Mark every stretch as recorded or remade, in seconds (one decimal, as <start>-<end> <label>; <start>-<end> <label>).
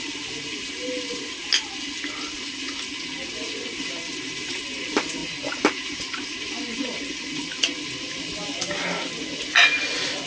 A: 0.0-5.2 recorded; 5.2-6.4 remade; 6.4-10.3 recorded